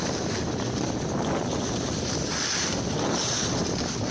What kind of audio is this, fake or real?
real